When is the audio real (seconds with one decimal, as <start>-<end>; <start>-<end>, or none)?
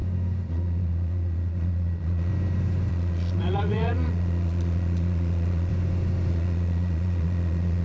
0.0-0.5; 2.3-2.9; 5.7-6.3